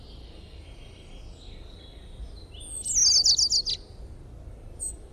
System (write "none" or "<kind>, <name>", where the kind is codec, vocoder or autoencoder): none